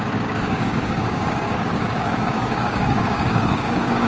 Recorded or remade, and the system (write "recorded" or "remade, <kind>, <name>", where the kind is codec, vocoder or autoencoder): remade, codec, DAC